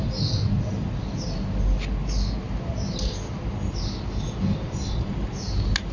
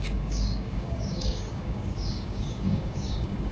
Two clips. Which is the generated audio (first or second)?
second